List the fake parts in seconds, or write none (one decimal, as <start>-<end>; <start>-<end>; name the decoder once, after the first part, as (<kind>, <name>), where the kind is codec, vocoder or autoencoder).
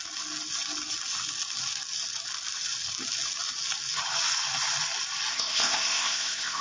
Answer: 5.3-6.6 (codec, ZipCodec)